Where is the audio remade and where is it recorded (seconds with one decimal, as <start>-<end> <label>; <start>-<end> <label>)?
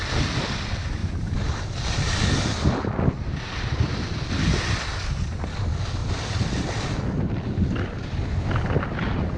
0.0-1.0 recorded; 1.0-4.3 remade; 4.3-6.0 recorded; 6.0-7.8 remade; 7.8-9.4 recorded